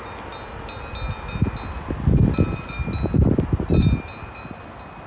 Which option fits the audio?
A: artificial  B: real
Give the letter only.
B